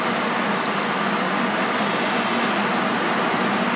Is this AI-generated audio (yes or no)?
no